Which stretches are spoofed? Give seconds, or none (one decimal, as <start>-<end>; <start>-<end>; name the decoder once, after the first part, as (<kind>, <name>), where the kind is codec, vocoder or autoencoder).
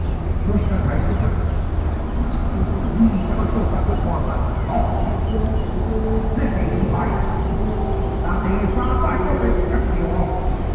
none